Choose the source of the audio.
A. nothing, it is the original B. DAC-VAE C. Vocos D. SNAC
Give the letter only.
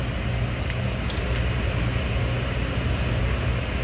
A